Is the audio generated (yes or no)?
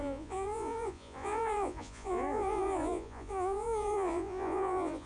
yes